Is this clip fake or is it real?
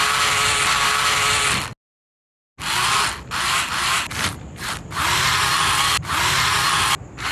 real